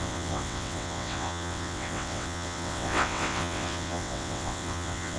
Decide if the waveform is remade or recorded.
remade